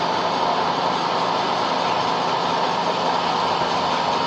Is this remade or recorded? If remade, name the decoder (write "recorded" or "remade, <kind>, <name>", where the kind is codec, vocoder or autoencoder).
recorded